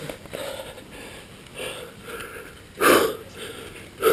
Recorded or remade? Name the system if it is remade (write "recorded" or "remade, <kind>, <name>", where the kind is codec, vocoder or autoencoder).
recorded